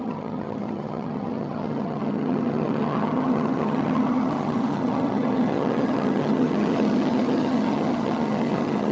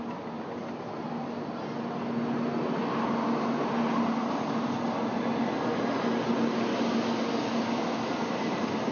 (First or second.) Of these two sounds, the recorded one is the second